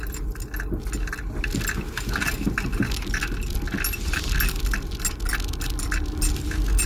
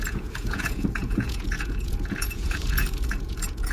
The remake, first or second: second